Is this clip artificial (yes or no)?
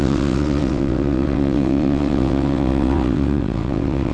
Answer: yes